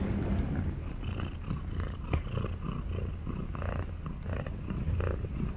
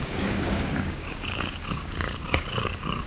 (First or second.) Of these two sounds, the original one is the first